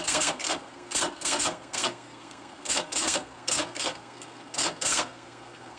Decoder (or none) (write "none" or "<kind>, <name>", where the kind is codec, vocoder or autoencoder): codec, SNAC